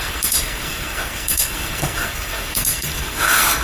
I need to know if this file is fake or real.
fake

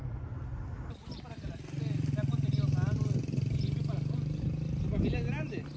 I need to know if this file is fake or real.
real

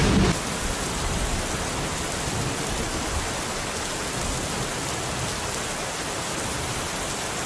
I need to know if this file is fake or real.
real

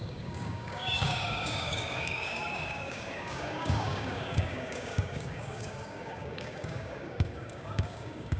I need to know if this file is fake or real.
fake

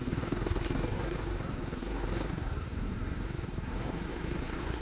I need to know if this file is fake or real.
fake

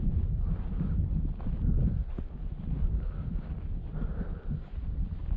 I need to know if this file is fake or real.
real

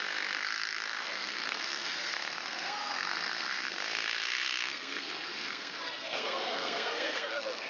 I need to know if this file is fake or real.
fake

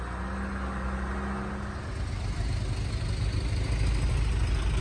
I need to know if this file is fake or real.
real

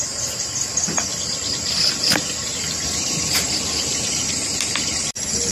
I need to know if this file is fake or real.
real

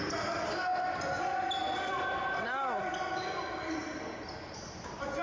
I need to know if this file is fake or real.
real